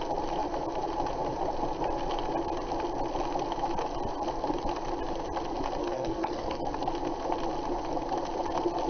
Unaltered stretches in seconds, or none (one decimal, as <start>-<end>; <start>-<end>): 0.0-5.8; 6.6-8.9